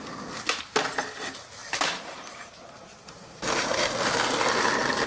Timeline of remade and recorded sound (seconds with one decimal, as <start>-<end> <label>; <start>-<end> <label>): 0.0-1.6 recorded; 1.6-3.8 remade; 3.8-5.1 recorded